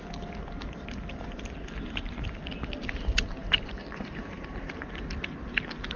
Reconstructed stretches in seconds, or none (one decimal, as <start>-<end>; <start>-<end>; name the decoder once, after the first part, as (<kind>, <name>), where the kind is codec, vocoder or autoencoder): 3.4-5.1 (vocoder, BigVGAN v2)